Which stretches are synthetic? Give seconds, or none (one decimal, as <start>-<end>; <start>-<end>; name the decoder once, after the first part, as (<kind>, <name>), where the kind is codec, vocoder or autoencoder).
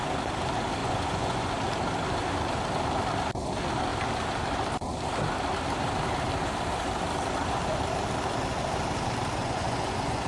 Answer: 0.8-1.5 (vocoder, Vocos); 9.4-10.3